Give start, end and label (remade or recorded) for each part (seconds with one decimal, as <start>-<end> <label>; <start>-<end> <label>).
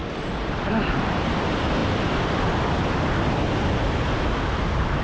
0.0-5.0 recorded